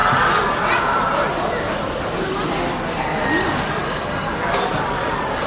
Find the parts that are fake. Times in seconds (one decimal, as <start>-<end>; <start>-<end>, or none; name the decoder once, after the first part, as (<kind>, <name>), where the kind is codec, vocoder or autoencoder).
none